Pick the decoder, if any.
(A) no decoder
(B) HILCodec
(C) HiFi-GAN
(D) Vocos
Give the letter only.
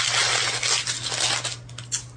A